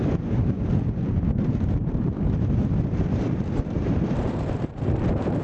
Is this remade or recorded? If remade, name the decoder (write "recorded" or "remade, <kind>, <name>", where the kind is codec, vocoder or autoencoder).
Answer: remade, vocoder, BigVGAN v2